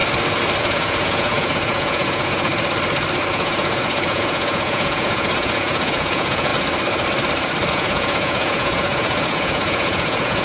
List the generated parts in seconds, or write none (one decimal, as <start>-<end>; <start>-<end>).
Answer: 0.6-2.5; 3.3-6.5; 7.7-10.4